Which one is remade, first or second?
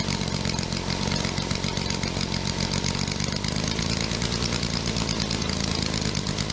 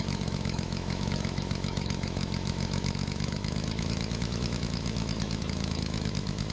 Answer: second